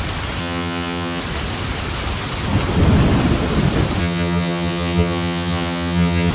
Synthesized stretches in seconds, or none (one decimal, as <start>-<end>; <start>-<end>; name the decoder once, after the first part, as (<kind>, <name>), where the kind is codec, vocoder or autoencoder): 0.4-1.2 (vocoder, HiFi-GAN); 4.0-6.3